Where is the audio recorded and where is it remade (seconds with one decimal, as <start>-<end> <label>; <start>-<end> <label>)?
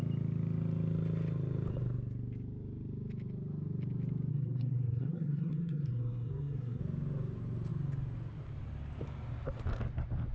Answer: 0.0-4.3 recorded; 4.3-6.8 remade; 6.8-10.3 recorded